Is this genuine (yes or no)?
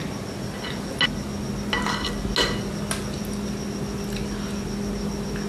yes